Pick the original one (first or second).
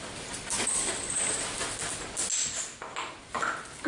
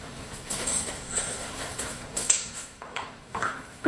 first